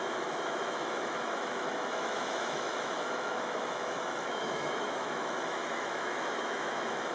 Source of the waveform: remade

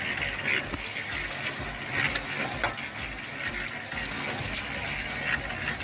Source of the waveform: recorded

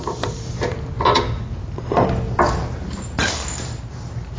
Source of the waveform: recorded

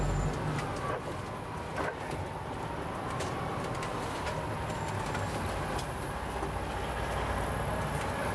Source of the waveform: recorded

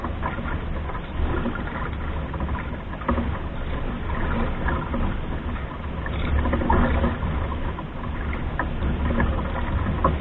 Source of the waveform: recorded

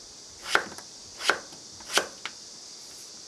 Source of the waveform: recorded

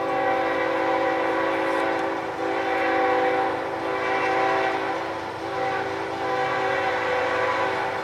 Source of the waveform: recorded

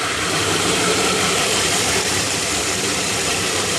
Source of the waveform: remade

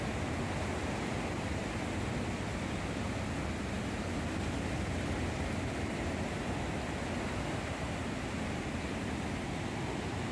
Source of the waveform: recorded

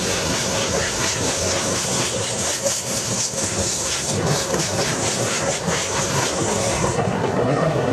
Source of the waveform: remade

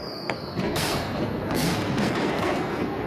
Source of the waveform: remade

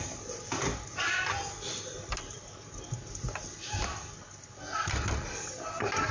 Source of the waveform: recorded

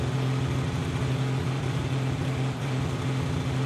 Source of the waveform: recorded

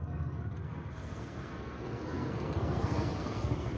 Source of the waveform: remade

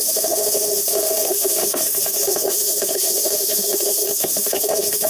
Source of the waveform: remade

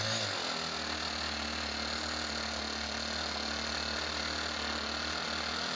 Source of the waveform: recorded